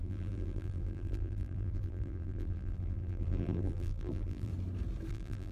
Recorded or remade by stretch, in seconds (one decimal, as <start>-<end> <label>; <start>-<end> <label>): 0.0-4.5 remade; 4.5-5.1 recorded; 5.1-5.5 remade